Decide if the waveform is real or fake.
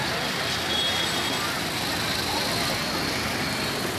real